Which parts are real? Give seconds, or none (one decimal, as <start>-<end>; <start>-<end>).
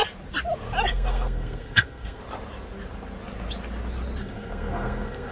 0.0-0.9; 2.2-4.2